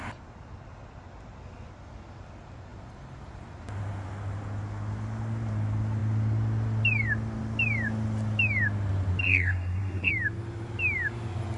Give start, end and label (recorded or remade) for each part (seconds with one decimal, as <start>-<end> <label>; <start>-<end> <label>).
0.0-9.2 recorded; 9.2-10.1 remade; 10.1-11.6 recorded

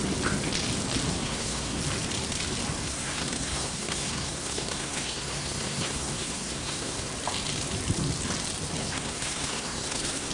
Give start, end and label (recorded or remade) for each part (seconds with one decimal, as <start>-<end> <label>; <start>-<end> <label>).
0.0-1.1 recorded; 1.1-1.8 remade; 1.8-2.8 recorded; 2.8-7.1 remade; 7.1-8.8 recorded; 8.8-10.3 remade

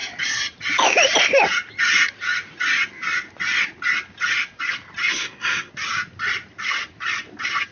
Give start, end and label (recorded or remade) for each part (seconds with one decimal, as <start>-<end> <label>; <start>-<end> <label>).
0.0-5.1 recorded; 5.1-5.7 remade; 5.7-7.7 recorded

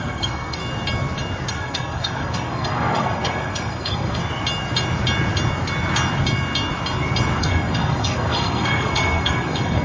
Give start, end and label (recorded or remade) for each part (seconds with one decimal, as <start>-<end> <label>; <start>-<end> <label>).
0.0-0.6 remade; 0.6-1.5 recorded; 1.5-4.2 remade; 4.2-7.4 recorded; 7.4-9.8 remade

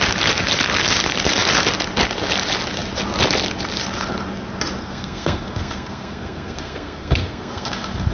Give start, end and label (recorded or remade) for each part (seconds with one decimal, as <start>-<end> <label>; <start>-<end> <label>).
0.0-4.8 recorded; 4.8-8.1 remade

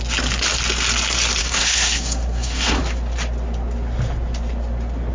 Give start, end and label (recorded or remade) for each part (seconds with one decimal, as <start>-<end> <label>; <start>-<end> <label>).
0.0-1.4 recorded; 1.4-2.8 remade; 2.8-5.1 recorded

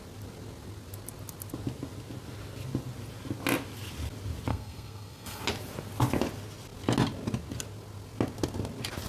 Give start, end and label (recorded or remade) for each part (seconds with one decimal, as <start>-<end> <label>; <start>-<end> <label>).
0.0-4.5 recorded; 4.5-5.4 remade; 5.4-9.1 recorded

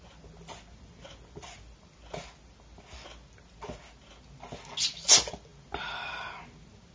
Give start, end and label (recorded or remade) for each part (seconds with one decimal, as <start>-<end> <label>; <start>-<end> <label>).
0.0-6.9 recorded